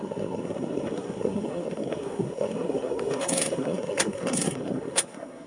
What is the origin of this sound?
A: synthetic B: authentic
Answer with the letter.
A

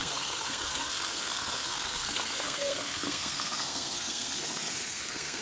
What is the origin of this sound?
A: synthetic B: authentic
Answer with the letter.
A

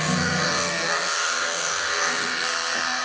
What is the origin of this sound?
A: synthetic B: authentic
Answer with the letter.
A